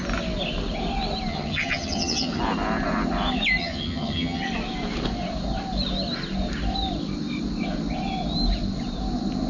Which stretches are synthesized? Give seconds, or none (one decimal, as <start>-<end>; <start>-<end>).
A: 1.3-2.4; 3.6-4.4